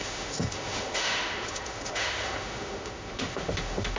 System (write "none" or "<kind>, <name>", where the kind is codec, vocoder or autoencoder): autoencoder, DAC-VAE